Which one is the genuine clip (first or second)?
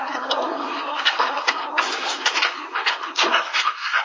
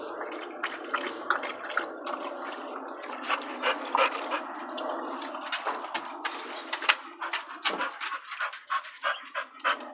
second